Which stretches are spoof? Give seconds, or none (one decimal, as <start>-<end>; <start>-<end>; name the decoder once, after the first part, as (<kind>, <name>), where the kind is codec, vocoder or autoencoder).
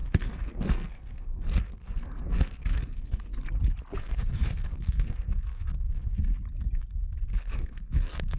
0.0-3.3 (codec, SNAC); 4.0-6.3; 7.3-8.4